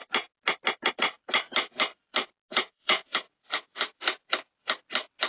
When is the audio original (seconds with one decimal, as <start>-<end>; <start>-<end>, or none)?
0.0-2.5; 4.2-5.3